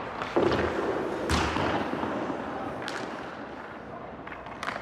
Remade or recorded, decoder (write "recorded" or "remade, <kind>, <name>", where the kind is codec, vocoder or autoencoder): recorded